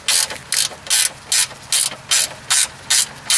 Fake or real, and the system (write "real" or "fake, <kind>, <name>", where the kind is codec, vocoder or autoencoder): real